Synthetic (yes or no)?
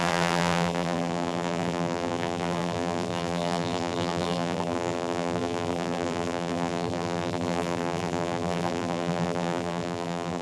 yes